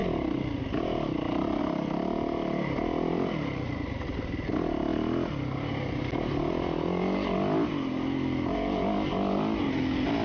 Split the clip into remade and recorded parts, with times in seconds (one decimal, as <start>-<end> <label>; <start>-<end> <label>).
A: 0.0-10.2 recorded